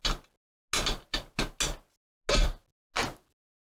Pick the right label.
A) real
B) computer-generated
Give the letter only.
A